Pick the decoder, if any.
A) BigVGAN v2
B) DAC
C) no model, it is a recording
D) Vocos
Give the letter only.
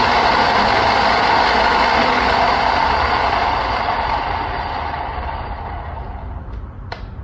C